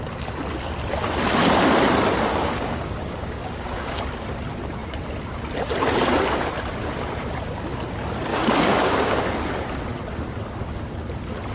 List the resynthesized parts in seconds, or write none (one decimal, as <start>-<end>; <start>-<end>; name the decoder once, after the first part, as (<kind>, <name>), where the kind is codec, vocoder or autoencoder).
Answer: 2.3-4.0 (codec, DAC); 8.3-9.2